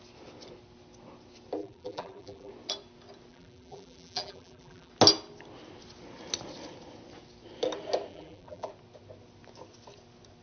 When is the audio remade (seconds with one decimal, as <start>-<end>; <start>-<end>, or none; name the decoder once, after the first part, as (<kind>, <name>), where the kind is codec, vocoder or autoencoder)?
1.6-2.5 (vocoder, BigVGAN v2); 3.3-4.9; 8.1-8.7

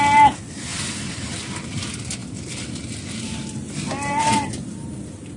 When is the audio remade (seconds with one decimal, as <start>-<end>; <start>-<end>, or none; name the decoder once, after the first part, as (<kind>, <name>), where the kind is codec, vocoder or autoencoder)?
none

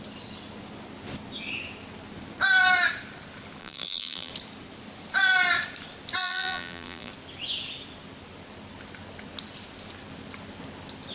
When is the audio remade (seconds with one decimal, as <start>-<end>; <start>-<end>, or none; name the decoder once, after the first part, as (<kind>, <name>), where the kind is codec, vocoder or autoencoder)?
3.6-4.3 (vocoder, BigVGAN v2); 6.2-7.1

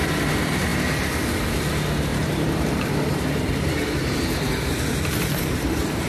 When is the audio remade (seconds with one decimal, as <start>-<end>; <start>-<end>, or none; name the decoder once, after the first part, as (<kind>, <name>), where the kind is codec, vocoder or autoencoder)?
2.1-6.1 (vocoder, BigVGAN v2)

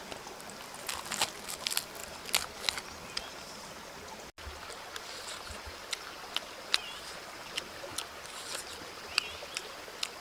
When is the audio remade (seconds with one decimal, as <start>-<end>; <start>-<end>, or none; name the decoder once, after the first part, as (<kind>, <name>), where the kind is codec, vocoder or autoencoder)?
none

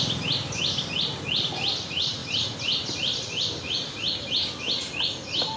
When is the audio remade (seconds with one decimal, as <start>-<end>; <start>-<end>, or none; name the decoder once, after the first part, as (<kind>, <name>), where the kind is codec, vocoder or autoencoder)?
none

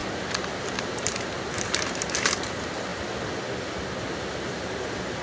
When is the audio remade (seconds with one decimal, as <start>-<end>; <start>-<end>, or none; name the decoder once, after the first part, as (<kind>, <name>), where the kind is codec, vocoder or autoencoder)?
0.8-2.9 (vocoder, BigVGAN v2); 4.4-5.2

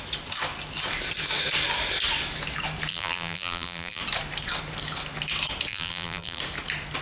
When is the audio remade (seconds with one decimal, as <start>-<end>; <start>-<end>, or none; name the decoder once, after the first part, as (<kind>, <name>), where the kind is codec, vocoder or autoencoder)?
2.9-4.0 (vocoder, BigVGAN v2); 5.7-6.4